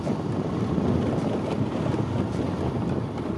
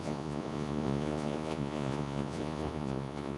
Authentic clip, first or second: first